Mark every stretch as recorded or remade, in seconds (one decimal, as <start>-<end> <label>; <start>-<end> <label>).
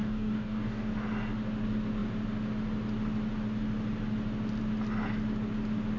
0.0-0.9 remade; 0.9-6.0 recorded